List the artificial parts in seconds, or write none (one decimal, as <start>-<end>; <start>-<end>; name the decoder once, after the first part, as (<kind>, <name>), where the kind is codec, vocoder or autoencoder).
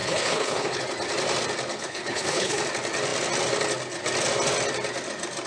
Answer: 0.0-0.8 (codec, HILCodec); 1.8-2.6